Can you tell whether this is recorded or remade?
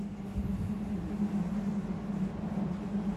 recorded